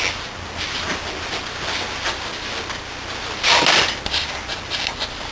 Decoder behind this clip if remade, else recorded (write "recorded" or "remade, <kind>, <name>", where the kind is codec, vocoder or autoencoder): recorded